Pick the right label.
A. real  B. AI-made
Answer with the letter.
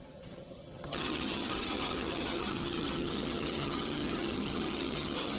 B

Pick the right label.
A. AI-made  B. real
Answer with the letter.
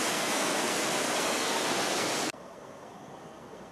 A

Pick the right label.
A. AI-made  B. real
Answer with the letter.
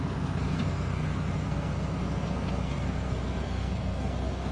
A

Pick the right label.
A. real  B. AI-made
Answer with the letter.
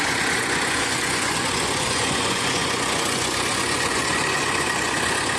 B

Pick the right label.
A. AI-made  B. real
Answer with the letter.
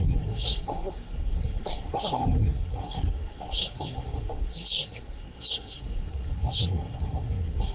A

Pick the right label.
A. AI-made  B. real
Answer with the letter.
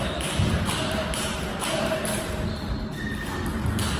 B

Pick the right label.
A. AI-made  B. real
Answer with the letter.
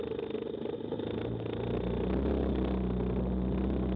B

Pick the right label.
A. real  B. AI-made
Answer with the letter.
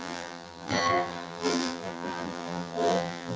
B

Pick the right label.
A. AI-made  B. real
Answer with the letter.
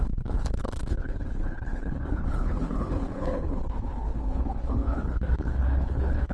A